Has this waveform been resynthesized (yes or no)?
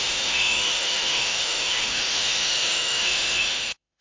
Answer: yes